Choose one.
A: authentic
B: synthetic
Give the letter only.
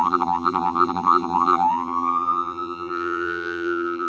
B